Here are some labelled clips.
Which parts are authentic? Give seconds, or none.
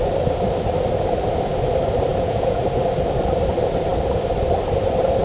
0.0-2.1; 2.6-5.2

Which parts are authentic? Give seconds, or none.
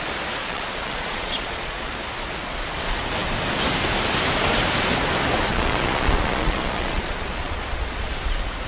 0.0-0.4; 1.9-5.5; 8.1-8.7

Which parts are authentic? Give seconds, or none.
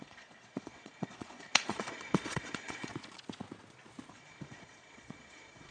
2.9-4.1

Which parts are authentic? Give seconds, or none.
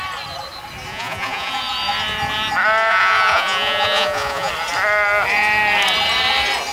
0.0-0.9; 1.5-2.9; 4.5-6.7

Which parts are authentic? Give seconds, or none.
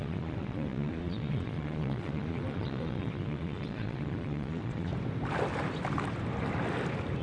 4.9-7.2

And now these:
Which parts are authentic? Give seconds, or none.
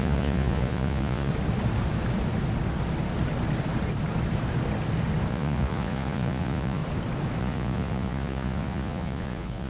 1.3-5.3; 6.8-7.4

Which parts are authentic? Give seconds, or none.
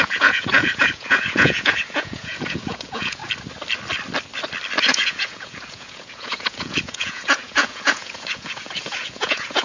3.2-4.8